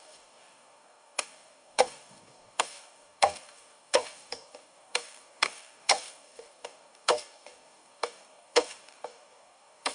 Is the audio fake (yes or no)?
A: yes